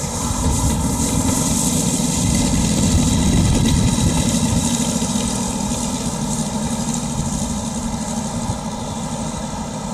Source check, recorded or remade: remade